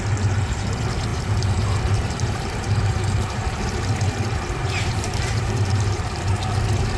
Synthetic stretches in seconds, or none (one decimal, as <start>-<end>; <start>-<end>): 1.1-3.6; 4.6-6.2